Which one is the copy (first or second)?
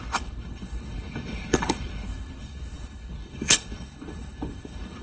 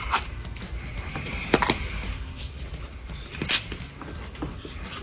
first